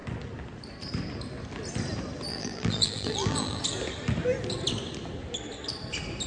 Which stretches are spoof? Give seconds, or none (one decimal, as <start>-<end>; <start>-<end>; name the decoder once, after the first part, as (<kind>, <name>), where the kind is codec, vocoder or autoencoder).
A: 2.3-3.6 (vocoder, BigVGAN v2)